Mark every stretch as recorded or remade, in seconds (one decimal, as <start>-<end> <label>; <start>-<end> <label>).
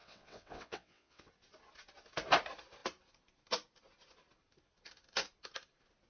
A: 0.0-1.3 remade; 1.3-6.1 recorded